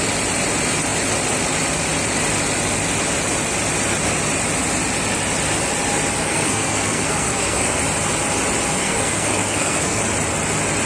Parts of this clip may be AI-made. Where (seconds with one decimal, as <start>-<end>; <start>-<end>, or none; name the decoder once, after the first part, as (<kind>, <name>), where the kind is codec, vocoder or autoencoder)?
6.2-7.8 (codec, SNAC); 8.8-10.0